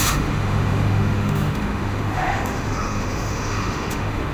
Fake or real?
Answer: fake